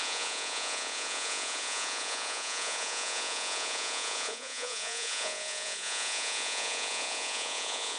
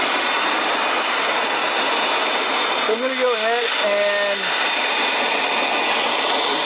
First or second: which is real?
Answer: second